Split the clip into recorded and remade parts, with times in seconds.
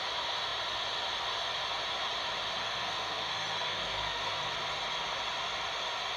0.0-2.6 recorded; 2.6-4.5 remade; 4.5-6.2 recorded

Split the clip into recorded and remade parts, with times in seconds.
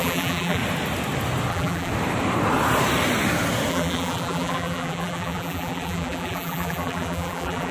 0.0-0.6 remade; 0.6-1.5 recorded; 1.5-1.9 remade; 1.9-3.7 recorded; 3.7-7.7 remade